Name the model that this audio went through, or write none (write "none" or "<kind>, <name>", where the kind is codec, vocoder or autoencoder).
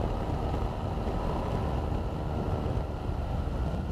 none